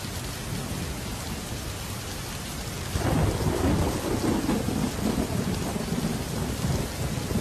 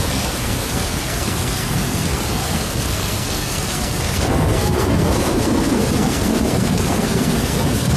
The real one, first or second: first